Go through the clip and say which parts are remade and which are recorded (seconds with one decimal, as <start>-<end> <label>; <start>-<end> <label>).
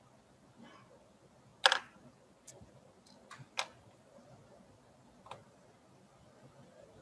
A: 0.0-7.0 recorded